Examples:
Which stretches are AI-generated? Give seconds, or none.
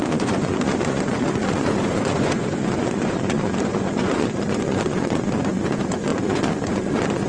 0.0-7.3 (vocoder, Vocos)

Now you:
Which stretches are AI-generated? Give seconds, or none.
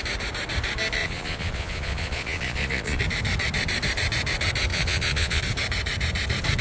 1.0-3.0 (vocoder, Vocos); 4.7-5.4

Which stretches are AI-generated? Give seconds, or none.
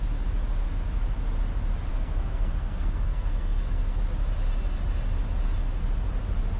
1.9-4.0 (codec, SNAC)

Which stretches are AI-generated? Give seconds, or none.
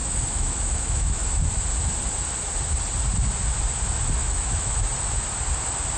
0.0-1.4 (autoencoder, DAC-VAE); 4.2-4.9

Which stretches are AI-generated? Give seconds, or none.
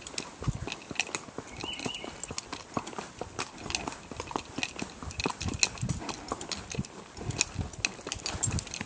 none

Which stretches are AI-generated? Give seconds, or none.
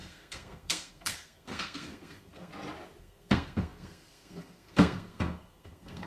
0.0-2.5 (codec, SNAC); 3.0-6.1